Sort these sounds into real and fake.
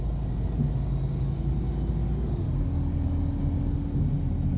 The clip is real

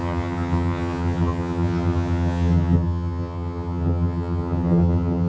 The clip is fake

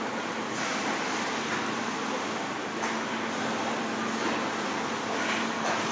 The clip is real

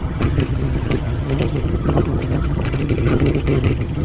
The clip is fake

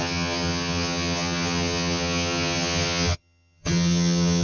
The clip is fake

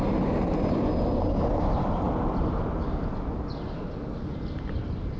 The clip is real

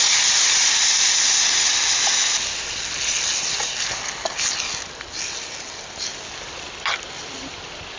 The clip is real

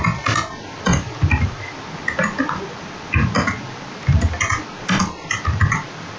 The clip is real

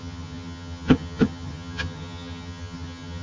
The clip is fake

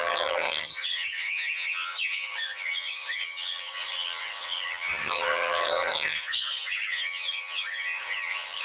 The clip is fake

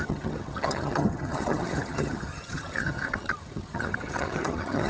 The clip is fake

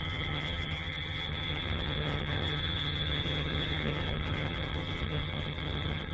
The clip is fake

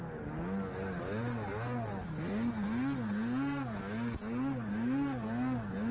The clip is real